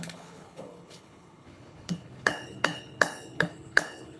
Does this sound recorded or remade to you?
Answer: remade